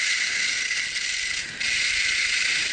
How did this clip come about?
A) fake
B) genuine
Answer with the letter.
B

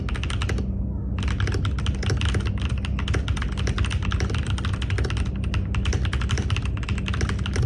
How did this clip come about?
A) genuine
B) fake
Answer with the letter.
A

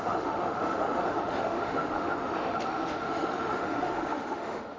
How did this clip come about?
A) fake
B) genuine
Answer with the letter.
A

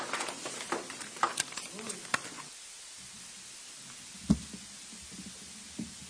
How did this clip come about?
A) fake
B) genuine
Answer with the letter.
B